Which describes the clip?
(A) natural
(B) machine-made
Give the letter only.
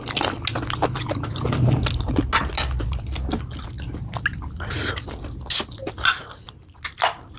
A